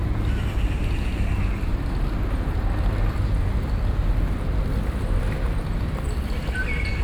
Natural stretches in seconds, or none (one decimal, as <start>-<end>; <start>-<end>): 0.0-7.0